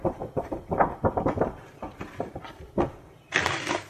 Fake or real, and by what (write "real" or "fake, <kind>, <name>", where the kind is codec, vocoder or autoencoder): fake, vocoder, BigVGAN v2